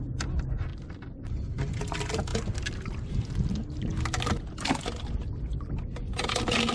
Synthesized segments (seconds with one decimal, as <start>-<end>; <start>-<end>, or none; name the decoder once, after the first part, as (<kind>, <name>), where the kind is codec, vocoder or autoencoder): none

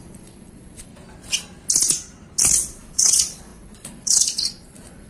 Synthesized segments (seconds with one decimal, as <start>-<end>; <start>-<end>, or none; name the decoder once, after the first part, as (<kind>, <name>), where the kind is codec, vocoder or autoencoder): 0.0-0.9 (vocoder, Vocos); 2.4-5.1

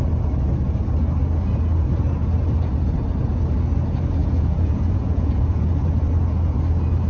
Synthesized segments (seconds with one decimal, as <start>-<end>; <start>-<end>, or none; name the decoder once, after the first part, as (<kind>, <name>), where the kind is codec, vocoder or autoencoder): 4.2-5.7 (vocoder, Vocos)

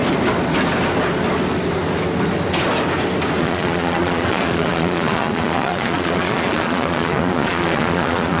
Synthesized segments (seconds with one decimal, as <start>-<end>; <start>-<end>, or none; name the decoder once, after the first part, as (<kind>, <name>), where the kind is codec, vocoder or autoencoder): 3.4-8.4 (vocoder, Vocos)

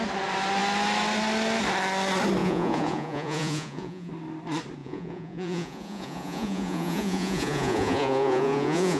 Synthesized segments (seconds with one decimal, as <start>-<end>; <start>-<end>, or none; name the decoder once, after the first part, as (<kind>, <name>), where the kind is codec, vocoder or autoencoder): 2.4-4.1 (vocoder, Vocos); 4.8-9.0

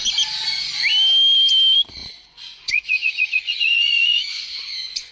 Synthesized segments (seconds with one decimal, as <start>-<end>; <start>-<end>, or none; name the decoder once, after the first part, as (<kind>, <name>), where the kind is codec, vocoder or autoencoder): 2.0-5.1 (vocoder, Vocos)